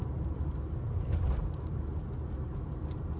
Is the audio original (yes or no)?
yes